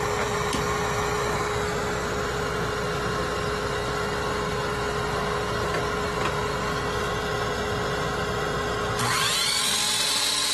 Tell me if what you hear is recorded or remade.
recorded